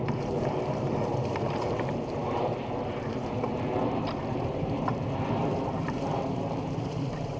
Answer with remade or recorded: remade